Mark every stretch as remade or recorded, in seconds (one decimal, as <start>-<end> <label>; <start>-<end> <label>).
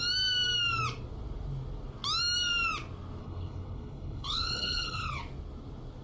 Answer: 0.0-3.2 recorded; 3.2-5.2 remade; 5.2-6.0 recorded